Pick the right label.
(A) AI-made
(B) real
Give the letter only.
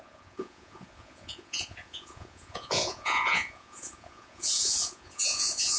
A